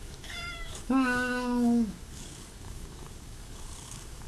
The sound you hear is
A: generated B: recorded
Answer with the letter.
A